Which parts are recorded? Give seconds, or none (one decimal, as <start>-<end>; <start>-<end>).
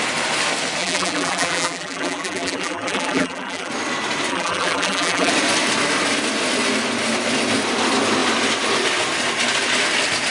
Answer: 0.0-0.8; 3.7-4.3; 5.3-10.3